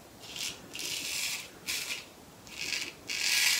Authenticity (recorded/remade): recorded